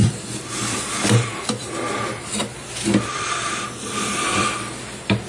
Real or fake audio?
fake